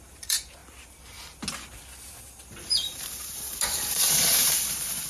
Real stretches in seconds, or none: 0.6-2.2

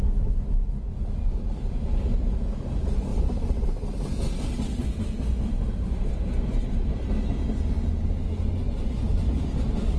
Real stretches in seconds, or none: 0.0-3.1; 3.9-10.0

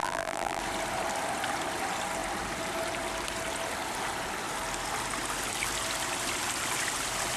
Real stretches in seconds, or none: 0.6-7.4

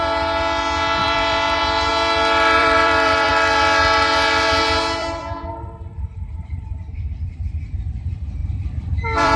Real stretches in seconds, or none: 0.0-1.0; 1.9-2.6; 3.3-5.0; 7.8-8.4